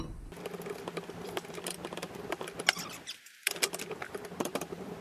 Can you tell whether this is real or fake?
real